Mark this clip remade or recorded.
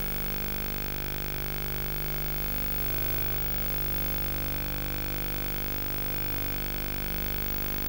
recorded